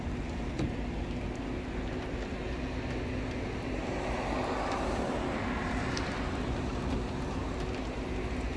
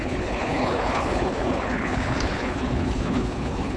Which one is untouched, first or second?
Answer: first